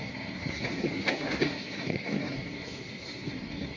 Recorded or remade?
remade